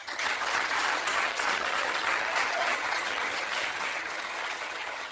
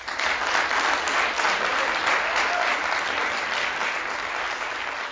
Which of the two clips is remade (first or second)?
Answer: first